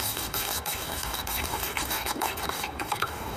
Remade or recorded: remade